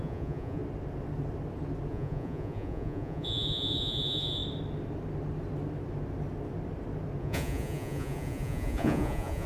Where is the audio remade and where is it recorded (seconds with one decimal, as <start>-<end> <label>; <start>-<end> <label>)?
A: 0.0-0.6 remade; 0.6-1.9 recorded; 1.9-4.4 remade; 4.4-7.2 recorded; 7.2-9.5 remade